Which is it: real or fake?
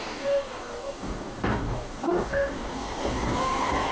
fake